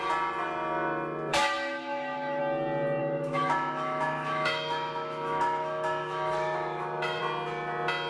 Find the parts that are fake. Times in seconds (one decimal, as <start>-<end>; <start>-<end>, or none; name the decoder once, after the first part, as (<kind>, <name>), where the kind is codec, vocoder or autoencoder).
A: 1.3-2.4 (autoencoder, DAC-VAE); 3.0-7.2